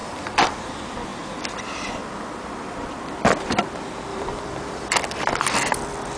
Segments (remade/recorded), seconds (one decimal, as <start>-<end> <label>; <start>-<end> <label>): 0.0-0.7 remade; 0.7-4.1 recorded; 4.1-5.4 remade; 5.4-6.2 recorded